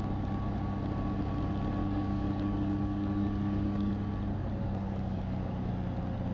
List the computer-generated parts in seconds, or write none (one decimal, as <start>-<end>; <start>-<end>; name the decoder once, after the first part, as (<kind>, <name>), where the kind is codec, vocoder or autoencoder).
1.8-3.9 (codec, DAC); 4.6-5.7